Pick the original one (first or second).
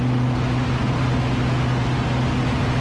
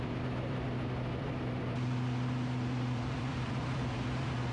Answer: first